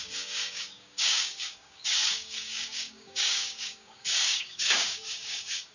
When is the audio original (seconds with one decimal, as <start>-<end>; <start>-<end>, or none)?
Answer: none

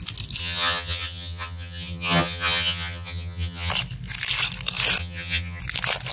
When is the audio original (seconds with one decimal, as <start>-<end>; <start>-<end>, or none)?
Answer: 0.0-0.4; 3.7-5.0; 5.6-6.1

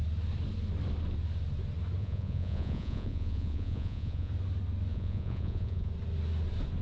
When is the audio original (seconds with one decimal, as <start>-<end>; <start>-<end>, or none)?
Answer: 0.0-2.0; 4.3-4.9; 5.9-6.8

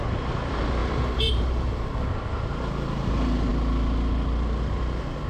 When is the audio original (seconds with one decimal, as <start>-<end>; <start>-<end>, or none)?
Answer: 0.0-0.8; 2.2-5.3